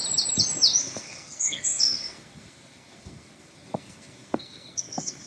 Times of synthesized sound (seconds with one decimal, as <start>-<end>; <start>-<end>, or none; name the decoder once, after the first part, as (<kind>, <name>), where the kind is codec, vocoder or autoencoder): 0.8-5.3 (codec, SNAC)